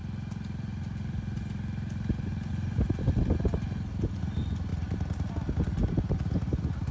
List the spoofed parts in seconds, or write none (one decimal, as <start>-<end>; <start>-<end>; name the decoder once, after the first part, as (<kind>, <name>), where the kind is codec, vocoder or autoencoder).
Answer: none